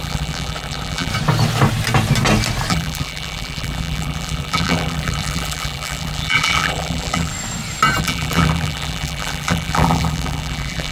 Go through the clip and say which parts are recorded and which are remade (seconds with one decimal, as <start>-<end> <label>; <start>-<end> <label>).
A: 0.0-1.1 remade; 1.1-2.7 recorded; 2.7-7.3 remade; 7.3-8.0 recorded; 8.0-10.9 remade